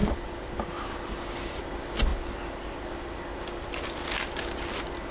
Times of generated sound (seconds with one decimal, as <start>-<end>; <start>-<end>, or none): none